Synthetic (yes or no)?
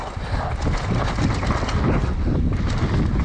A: no